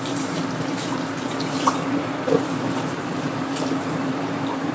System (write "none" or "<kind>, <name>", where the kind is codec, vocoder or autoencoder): vocoder, BigVGAN v2